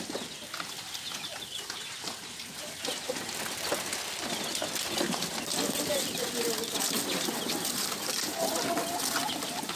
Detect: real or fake real